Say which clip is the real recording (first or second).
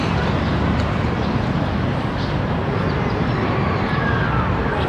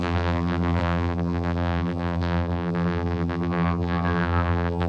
first